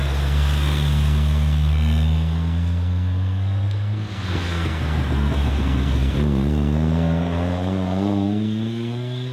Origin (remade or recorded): remade